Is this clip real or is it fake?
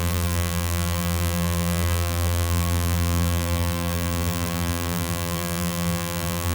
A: fake